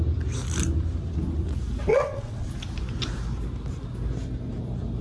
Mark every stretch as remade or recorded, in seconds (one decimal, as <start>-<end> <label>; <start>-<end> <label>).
0.0-1.9 recorded; 1.9-2.5 remade; 2.5-5.0 recorded